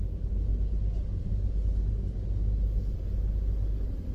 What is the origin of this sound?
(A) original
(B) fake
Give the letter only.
A